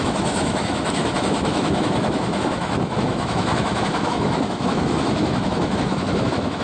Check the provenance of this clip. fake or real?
fake